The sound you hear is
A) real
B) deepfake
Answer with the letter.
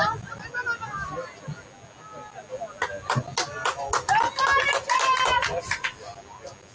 A